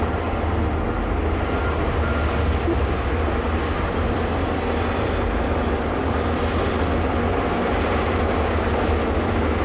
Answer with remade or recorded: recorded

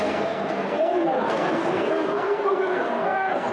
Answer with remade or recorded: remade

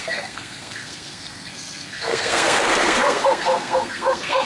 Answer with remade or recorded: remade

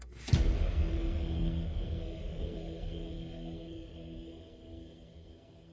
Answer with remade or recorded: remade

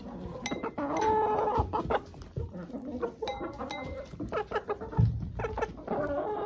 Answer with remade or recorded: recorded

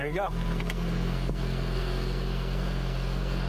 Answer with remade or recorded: remade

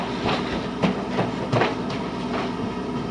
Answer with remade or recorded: recorded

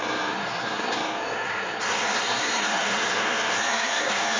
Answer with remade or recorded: remade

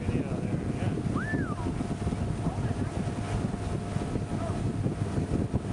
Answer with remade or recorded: recorded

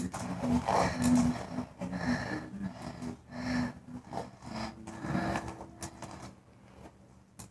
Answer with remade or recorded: recorded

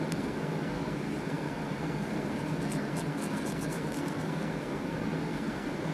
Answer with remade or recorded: remade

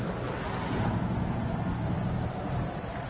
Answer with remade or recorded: recorded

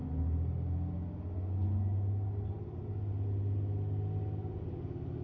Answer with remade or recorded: recorded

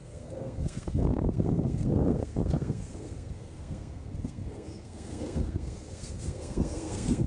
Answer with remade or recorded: remade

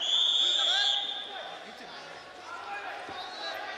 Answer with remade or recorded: recorded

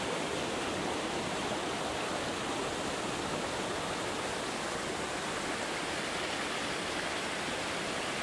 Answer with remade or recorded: recorded